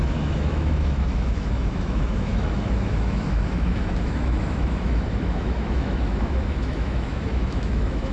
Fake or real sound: fake